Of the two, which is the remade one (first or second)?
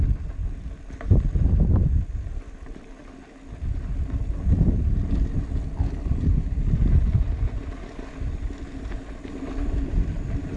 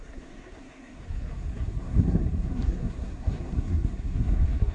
second